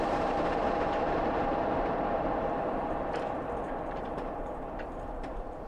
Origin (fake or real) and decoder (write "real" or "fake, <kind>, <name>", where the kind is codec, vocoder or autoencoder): fake, vocoder, BigVGAN v2